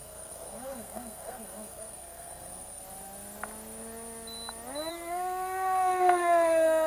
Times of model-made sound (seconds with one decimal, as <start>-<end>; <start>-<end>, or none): 0.0-2.8; 4.9-6.9